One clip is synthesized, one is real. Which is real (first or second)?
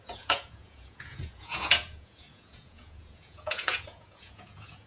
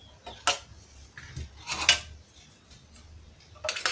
second